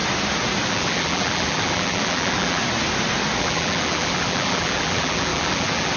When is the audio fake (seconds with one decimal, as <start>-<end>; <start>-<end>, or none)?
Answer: 0.7-2.6; 3.4-6.0